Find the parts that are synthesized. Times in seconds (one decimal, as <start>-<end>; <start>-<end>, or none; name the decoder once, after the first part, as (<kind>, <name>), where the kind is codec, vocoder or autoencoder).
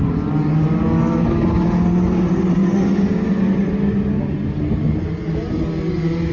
none